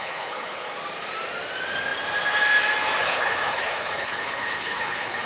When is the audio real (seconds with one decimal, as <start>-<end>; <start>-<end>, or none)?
0.7-3.0